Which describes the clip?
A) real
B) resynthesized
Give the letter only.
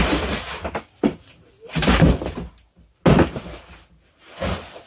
A